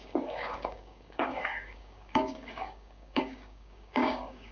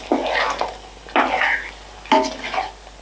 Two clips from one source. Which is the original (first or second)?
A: second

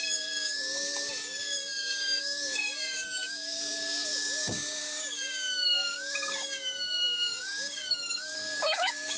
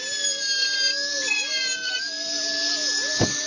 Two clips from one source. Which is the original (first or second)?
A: second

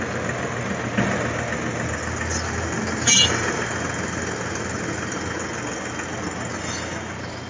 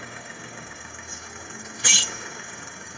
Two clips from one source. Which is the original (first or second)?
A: first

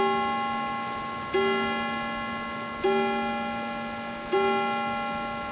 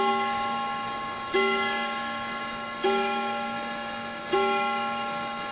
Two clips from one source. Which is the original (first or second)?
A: first